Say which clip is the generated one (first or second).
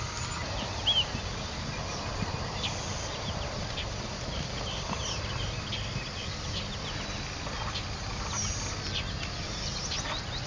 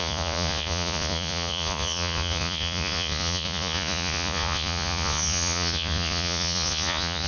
second